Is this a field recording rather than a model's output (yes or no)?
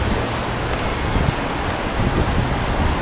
yes